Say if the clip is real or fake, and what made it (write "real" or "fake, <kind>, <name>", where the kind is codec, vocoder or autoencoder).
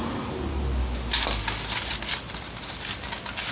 real